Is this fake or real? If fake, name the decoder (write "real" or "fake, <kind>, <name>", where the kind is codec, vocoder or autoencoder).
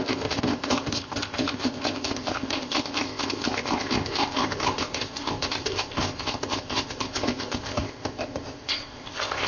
fake, codec, ZipCodec